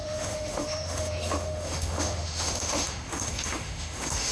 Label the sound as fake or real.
fake